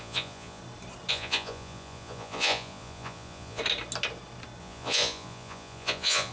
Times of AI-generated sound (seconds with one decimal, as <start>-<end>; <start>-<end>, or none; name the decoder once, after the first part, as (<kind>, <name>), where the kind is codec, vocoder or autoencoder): 0.0-0.6 (vocoder, Vocos); 1.1-3.6; 4.6-6.3